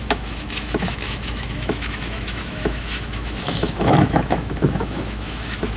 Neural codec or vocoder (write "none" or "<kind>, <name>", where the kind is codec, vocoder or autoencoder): autoencoder, DAC-VAE